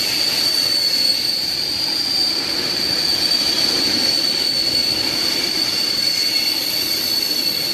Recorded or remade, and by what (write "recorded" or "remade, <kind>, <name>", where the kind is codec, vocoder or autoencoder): remade, vocoder, BigVGAN v2